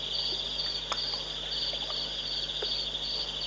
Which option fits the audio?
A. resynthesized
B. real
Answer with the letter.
B